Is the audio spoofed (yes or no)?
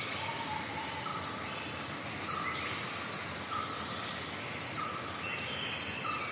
no